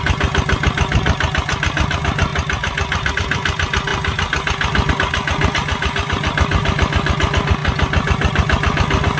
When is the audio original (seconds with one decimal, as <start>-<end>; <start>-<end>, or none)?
0.0-9.2